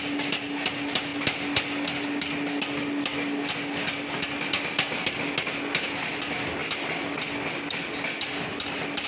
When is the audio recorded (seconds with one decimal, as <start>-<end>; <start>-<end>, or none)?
0.0-9.1